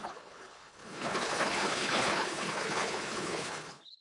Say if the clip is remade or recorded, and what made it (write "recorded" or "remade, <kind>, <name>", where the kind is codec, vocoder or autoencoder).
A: remade, codec, HILCodec